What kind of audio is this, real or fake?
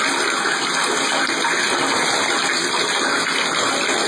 real